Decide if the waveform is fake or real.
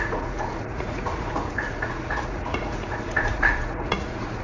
fake